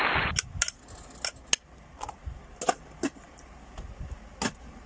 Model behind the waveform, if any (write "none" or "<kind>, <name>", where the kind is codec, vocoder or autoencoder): none